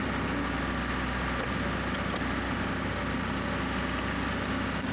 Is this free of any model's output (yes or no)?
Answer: yes